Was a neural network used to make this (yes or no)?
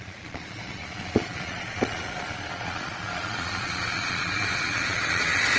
yes